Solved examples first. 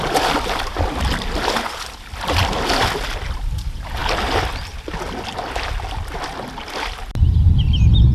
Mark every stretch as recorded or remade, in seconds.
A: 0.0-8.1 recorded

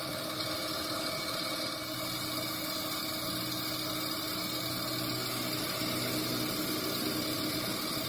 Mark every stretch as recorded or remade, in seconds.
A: 0.0-8.1 recorded

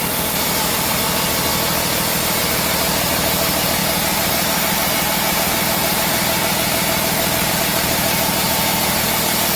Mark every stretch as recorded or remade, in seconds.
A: 0.0-9.6 recorded

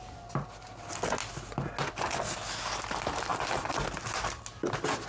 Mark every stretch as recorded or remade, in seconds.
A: 0.0-3.3 recorded; 3.3-4.0 remade; 4.0-5.1 recorded

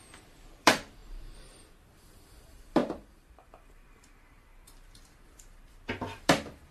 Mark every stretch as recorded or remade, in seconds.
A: 0.0-6.7 remade